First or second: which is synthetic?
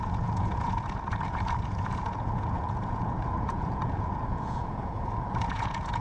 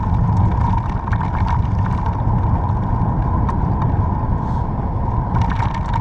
first